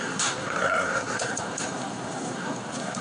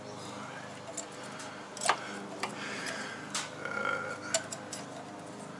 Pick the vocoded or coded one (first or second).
first